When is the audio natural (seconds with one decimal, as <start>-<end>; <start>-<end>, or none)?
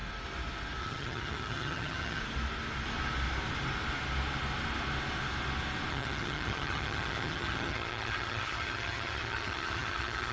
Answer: 0.0-0.8; 2.2-5.9